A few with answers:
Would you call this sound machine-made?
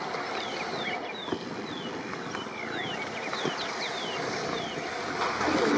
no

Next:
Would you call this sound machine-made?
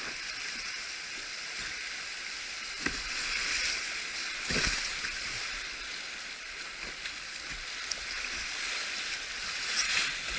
no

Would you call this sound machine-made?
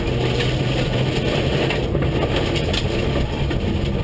no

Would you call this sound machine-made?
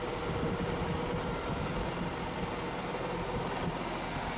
no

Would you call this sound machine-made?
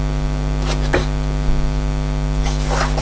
no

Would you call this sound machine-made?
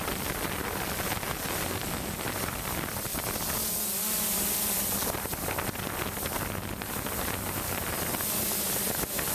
no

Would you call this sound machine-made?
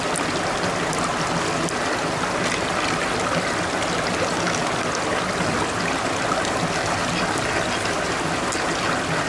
no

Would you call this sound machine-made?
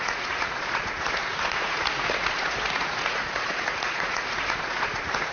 yes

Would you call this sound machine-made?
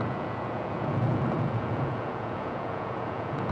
yes